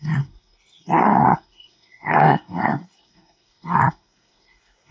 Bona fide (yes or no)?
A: no